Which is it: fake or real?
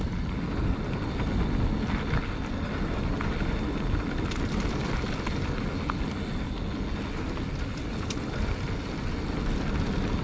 real